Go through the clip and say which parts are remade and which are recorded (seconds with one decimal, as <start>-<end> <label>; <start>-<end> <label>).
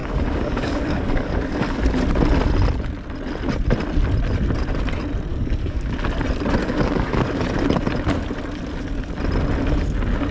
0.0-1.8 remade; 1.8-5.3 recorded; 5.3-5.9 remade; 5.9-6.6 recorded; 6.6-7.4 remade; 7.4-10.3 recorded